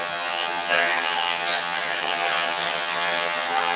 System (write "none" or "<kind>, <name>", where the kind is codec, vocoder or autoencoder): vocoder, HiFi-GAN